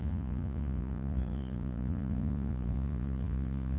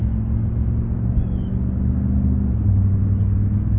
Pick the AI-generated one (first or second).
first